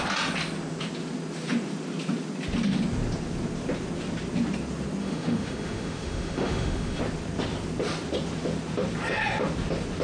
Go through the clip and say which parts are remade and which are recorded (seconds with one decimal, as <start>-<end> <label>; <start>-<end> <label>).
0.0-5.0 recorded; 5.0-7.0 remade; 7.0-10.0 recorded